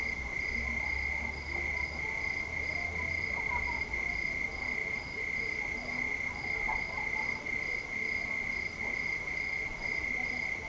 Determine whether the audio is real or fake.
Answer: real